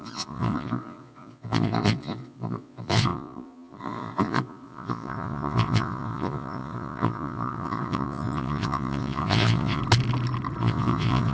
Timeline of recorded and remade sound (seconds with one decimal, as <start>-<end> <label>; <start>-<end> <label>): 0.0-9.8 remade; 9.8-10.6 recorded; 10.6-11.3 remade

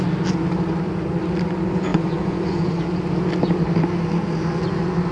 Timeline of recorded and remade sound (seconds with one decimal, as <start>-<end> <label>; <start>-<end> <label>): 0.0-1.9 recorded; 1.9-2.8 remade; 2.8-5.1 recorded

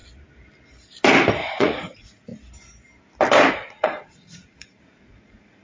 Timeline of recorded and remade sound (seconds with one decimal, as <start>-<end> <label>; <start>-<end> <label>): 0.0-1.3 recorded; 1.3-2.3 remade; 2.3-3.5 recorded; 3.5-5.6 remade

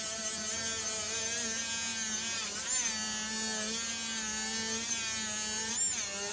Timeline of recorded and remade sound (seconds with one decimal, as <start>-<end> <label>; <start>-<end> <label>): 0.0-6.3 recorded

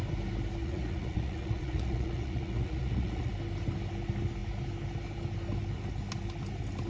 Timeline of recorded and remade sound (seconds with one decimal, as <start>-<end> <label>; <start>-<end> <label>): 0.0-0.6 recorded; 0.6-3.3 remade; 3.3-6.9 recorded

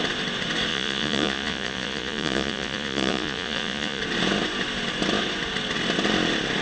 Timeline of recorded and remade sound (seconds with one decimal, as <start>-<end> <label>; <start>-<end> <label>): 0.0-0.7 recorded; 0.7-4.0 remade; 4.0-6.6 recorded